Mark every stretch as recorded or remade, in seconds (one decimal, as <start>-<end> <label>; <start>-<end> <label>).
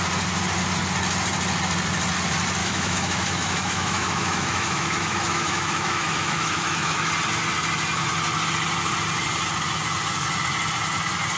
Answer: 0.0-2.6 recorded; 2.6-7.1 remade; 7.1-11.4 recorded